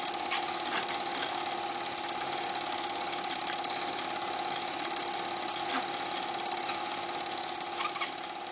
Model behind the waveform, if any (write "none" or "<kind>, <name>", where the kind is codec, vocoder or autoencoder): none